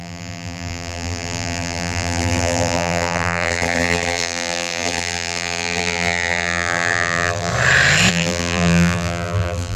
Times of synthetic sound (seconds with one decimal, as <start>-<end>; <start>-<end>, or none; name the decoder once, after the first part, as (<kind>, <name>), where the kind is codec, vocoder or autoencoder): 0.0-7.5 (vocoder, BigVGAN v2); 8.1-9.8